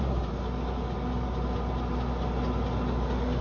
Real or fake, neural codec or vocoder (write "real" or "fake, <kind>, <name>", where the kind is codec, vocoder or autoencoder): real